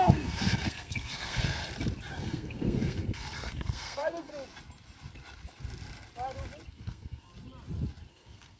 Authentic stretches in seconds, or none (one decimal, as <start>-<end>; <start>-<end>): 1.6-2.1; 4.3-6.7; 7.3-8.1